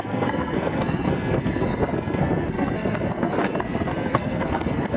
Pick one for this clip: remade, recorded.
remade